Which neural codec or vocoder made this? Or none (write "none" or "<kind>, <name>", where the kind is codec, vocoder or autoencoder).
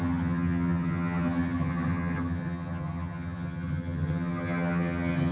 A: vocoder, HiFi-GAN